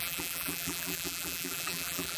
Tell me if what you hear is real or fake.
fake